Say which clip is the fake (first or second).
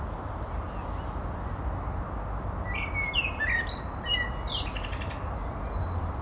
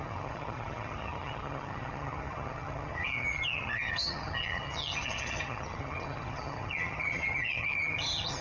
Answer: second